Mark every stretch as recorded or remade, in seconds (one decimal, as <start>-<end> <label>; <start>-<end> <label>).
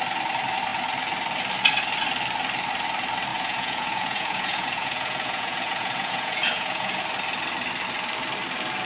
0.0-3.3 recorded; 3.3-7.0 remade; 7.0-8.9 recorded